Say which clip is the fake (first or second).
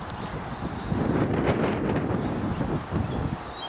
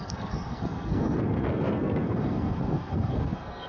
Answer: second